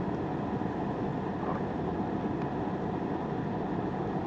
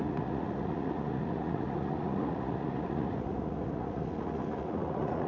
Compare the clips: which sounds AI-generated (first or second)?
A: second